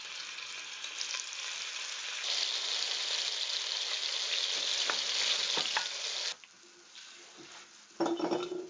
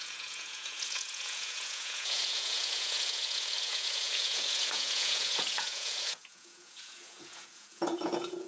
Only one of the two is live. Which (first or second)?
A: first